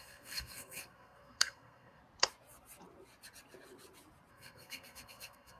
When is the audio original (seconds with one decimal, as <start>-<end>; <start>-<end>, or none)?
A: 2.0-4.3